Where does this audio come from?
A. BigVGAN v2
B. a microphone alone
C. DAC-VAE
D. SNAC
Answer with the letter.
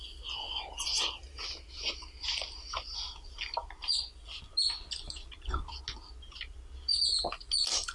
B